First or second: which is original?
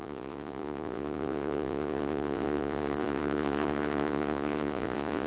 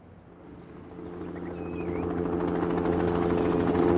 second